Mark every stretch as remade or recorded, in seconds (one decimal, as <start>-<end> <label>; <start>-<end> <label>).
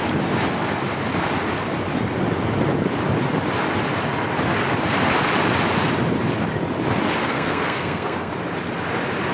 0.0-7.2 recorded; 7.2-8.3 remade; 8.3-9.3 recorded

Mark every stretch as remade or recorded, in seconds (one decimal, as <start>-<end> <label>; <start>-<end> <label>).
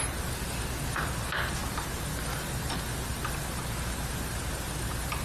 0.0-5.2 recorded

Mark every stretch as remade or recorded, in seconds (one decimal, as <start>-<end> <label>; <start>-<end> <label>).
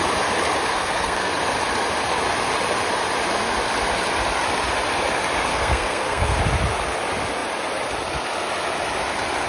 0.0-0.7 recorded; 0.7-1.3 remade; 1.3-5.5 recorded; 5.5-6.4 remade; 6.4-9.5 recorded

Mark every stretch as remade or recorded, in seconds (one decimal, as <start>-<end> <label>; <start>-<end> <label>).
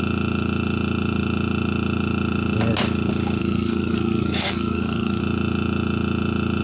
0.0-3.4 recorded; 3.4-5.2 remade; 5.2-6.6 recorded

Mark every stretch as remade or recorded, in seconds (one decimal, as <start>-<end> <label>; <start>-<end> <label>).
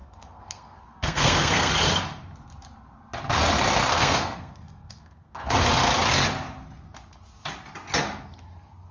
0.0-1.7 remade; 1.7-3.9 recorded; 3.9-5.5 remade; 5.5-8.9 recorded